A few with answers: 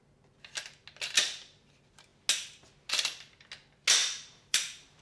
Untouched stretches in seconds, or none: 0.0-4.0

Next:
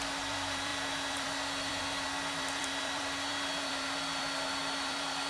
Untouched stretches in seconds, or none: none

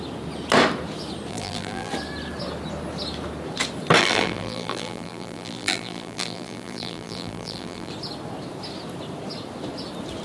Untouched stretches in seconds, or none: 0.0-1.3; 1.9-4.0; 7.9-10.2

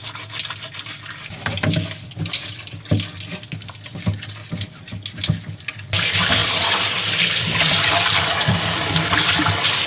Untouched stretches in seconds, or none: 0.0-6.4; 8.9-9.9

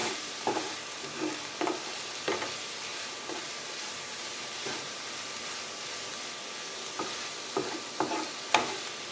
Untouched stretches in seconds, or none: 0.7-2.9; 5.1-9.1

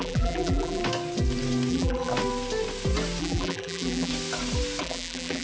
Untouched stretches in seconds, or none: 0.8-1.7; 2.1-3.2; 4.1-4.8